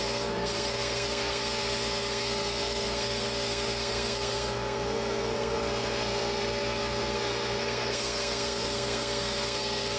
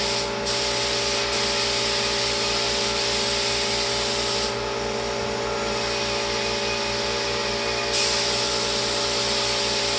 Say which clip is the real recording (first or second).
second